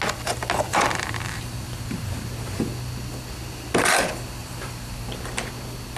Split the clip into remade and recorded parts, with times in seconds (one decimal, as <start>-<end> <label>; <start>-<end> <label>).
0.0-0.7 recorded; 0.7-2.7 remade; 2.7-4.4 recorded; 4.4-5.2 remade; 5.2-6.0 recorded